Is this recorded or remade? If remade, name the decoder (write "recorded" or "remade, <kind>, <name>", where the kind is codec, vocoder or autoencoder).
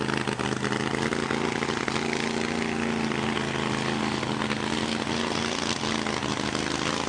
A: recorded